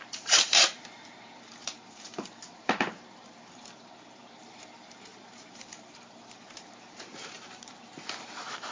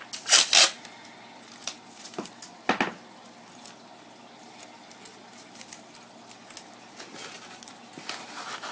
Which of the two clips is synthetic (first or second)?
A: first